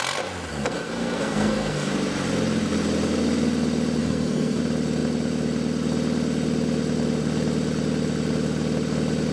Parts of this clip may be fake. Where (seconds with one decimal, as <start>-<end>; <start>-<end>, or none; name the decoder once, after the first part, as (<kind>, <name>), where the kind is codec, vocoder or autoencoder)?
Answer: 0.5-1.9 (codec, SNAC); 4.0-4.6

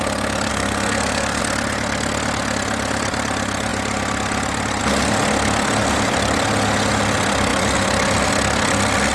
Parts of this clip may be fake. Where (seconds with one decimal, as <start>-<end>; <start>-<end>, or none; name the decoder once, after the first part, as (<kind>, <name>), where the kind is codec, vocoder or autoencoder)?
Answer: 0.5-1.4 (codec, SNAC)